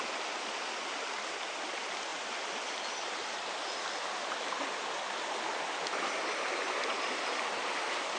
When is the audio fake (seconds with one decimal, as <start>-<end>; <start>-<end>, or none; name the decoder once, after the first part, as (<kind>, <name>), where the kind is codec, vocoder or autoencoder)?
none